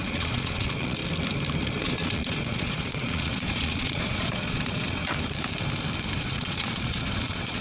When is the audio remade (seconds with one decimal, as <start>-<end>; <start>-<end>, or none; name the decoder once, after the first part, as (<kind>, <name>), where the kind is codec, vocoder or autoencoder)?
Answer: 0.0-1.0 (vocoder, Vocos); 1.8-5.0; 6.2-7.6

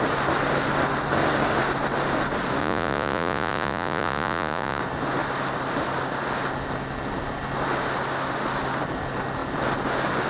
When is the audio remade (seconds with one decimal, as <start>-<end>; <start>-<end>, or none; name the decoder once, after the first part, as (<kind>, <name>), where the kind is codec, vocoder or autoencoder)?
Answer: 2.6-4.8 (vocoder, Vocos)

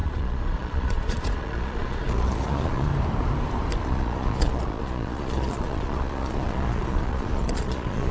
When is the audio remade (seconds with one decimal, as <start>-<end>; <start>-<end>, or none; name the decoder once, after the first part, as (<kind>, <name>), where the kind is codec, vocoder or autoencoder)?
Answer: 0.0-2.9 (vocoder, Vocos); 3.8-8.1

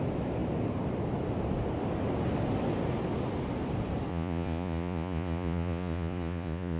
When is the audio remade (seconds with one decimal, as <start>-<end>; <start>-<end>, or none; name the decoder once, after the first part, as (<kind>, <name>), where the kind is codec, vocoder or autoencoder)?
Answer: 4.1-6.8 (vocoder, Vocos)

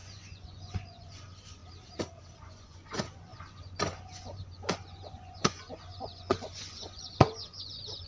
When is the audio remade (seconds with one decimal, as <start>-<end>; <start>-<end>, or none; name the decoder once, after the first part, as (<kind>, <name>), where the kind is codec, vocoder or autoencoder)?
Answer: 0.0-1.6 (vocoder, Vocos); 2.4-8.1

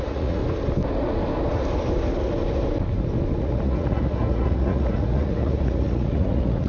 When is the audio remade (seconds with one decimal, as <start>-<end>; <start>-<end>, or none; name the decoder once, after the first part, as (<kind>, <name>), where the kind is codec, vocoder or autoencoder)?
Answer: 0.0-0.4 (vocoder, Vocos); 3.4-6.7

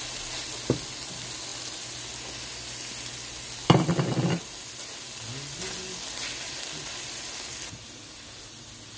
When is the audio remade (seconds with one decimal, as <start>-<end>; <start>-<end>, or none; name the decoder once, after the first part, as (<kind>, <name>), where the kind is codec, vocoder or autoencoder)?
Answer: none

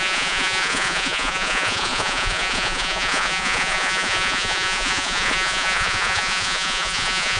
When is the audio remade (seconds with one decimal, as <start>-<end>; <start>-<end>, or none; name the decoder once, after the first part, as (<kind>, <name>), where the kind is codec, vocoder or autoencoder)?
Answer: 0.0-7.4 (vocoder, Vocos)